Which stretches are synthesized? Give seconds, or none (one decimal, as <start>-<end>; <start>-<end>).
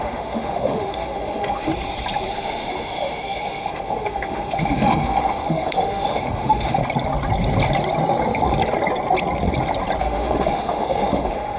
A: 0.0-1.7; 2.3-6.8; 10.0-11.6